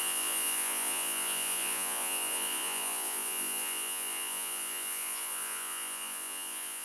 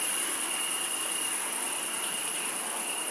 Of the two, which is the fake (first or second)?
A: first